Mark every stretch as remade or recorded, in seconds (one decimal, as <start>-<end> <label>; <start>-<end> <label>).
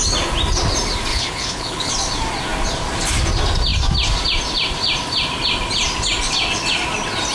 0.0-1.1 recorded; 1.1-1.9 remade; 1.9-7.3 recorded